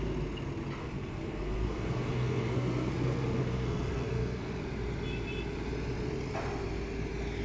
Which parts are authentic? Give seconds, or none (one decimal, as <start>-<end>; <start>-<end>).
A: 0.0-0.8; 4.6-7.4